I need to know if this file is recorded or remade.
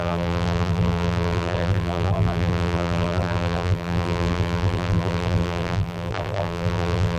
remade